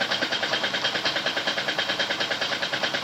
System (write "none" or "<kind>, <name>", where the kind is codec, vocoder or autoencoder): vocoder, BigVGAN v2